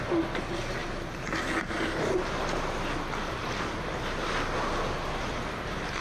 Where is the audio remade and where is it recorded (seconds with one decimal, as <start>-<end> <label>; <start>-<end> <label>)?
0.0-6.0 recorded